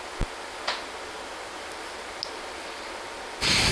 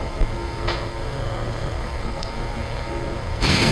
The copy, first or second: second